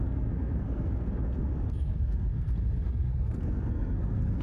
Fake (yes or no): yes